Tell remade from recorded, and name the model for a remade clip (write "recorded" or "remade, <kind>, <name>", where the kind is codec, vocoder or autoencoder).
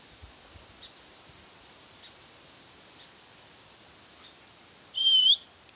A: recorded